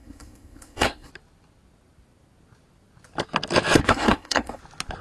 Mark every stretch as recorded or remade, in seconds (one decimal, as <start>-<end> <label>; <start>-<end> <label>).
0.0-1.1 remade; 1.1-3.8 recorded; 3.8-4.6 remade; 4.6-5.0 recorded